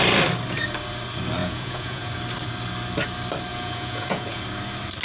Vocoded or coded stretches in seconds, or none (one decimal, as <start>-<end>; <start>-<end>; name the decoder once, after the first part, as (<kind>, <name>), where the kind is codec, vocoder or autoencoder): 1.4-2.1 (vocoder, Vocos); 3.5-4.4